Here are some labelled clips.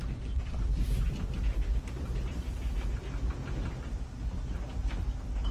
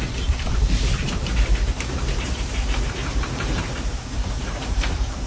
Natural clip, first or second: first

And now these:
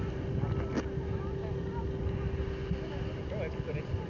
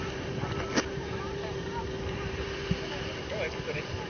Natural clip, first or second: first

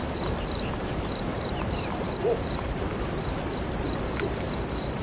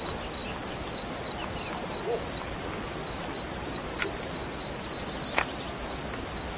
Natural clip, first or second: second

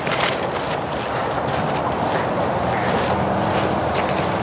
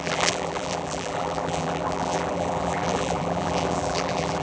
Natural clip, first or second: first